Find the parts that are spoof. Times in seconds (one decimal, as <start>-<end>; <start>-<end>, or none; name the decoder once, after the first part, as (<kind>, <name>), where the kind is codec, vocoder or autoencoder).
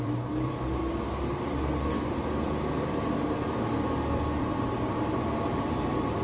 0.0-0.8 (vocoder, BigVGAN v2); 4.5-6.2